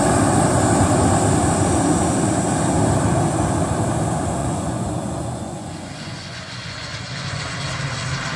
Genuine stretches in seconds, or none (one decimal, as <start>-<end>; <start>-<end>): 0.0-4.4; 7.4-8.4